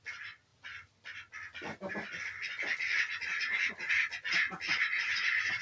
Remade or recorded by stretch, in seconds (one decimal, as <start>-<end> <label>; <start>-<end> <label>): 0.0-5.6 recorded